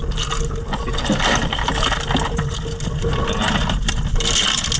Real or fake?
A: real